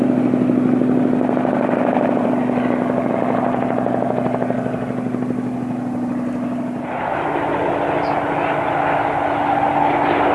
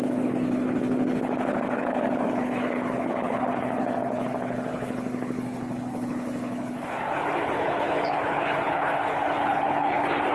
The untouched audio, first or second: first